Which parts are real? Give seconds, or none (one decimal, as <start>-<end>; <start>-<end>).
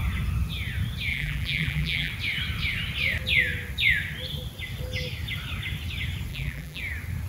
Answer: 0.0-1.1; 2.1-6.3; 6.8-7.3